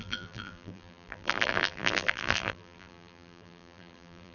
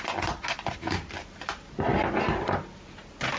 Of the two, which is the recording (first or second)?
second